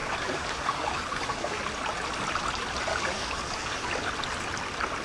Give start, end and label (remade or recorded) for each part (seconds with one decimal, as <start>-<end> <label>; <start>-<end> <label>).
0.0-1.6 remade; 1.6-2.9 recorded; 2.9-4.1 remade; 4.1-5.0 recorded